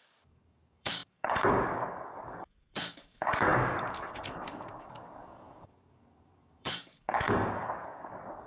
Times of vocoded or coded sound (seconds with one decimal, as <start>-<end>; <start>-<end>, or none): 0.0-8.5